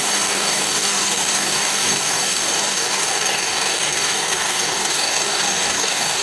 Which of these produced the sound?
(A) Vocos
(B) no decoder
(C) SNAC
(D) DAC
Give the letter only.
D